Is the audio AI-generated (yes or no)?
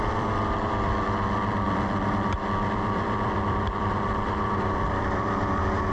yes